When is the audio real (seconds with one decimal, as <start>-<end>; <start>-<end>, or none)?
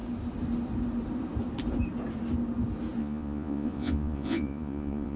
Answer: 0.0-3.0